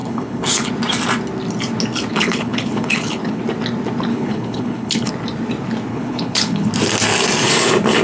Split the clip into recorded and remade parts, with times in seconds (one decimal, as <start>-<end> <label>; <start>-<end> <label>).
0.0-0.7 remade; 0.7-2.1 recorded; 2.1-3.4 remade; 3.4-4.1 recorded; 4.1-5.1 remade; 5.1-5.9 recorded; 5.9-6.7 remade; 6.7-8.0 recorded